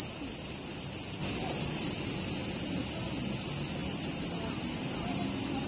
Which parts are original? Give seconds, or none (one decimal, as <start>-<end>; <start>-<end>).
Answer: 0.0-3.8